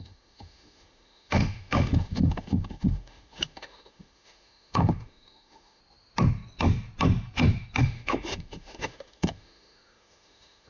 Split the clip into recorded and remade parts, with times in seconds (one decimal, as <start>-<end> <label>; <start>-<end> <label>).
0.0-5.8 remade; 5.8-7.8 recorded; 7.8-10.7 remade